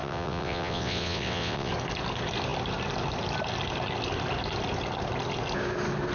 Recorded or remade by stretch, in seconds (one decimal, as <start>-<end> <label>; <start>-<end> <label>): 0.0-1.7 remade; 1.7-6.1 recorded